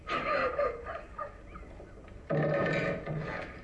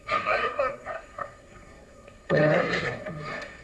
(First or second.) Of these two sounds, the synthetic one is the second